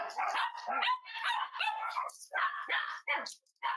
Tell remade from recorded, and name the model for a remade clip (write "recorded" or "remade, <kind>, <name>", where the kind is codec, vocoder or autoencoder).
recorded